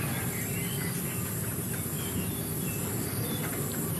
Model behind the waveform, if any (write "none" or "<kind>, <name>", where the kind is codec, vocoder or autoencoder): none